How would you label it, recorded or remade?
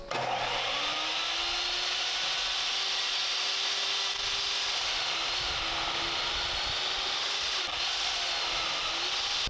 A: recorded